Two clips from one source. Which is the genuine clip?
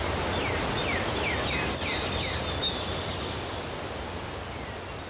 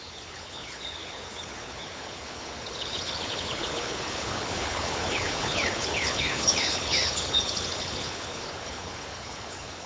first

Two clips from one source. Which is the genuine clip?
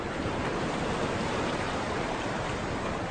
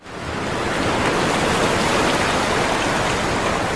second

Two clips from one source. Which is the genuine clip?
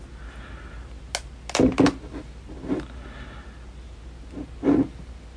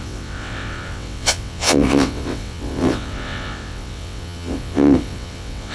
first